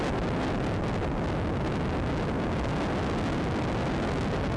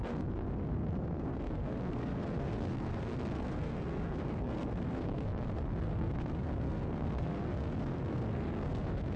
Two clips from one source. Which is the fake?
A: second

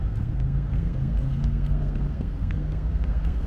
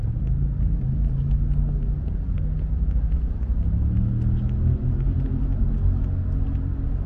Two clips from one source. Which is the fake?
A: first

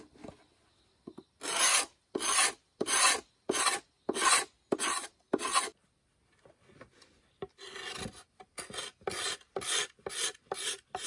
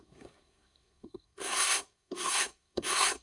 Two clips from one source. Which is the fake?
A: second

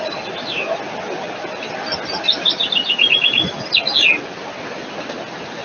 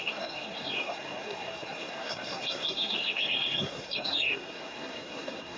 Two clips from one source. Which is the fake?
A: second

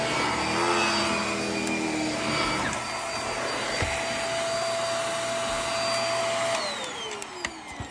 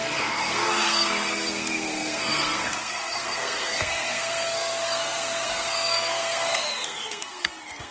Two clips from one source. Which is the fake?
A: second